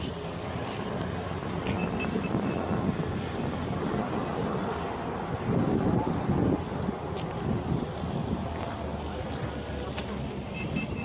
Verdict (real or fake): real